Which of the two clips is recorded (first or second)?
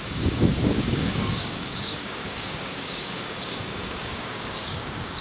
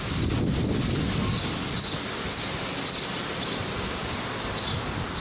second